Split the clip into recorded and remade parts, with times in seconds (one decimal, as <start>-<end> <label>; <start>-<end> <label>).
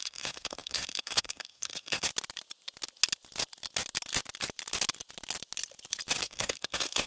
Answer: 0.0-2.1 remade; 2.1-6.2 recorded; 6.2-7.1 remade